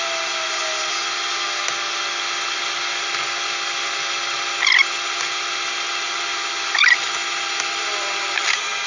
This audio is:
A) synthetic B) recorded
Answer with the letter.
B